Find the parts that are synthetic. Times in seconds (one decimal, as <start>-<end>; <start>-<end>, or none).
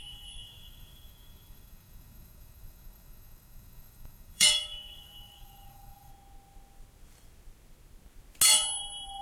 0.0-6.1